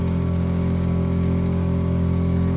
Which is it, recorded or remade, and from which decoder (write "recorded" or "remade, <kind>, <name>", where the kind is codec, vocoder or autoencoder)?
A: remade, codec, DAC